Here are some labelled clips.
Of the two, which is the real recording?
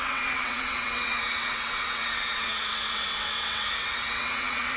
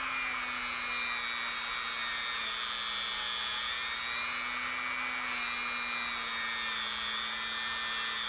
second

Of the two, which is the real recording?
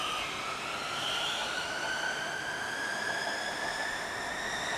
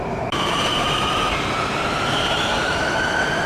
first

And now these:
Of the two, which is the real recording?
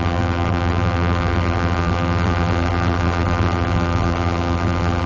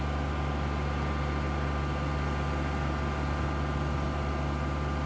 second